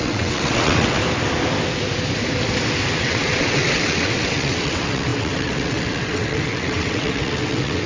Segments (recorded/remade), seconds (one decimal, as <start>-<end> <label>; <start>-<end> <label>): 0.0-1.0 remade; 1.0-3.0 recorded; 3.0-7.9 remade